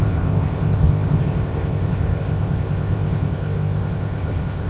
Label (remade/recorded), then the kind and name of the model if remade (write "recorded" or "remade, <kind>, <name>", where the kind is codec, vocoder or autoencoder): remade, codec, ZipCodec